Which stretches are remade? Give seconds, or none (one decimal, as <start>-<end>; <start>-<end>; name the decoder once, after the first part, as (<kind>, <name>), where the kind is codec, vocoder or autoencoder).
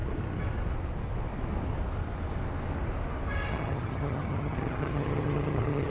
3.5-5.9 (vocoder, HiFi-GAN)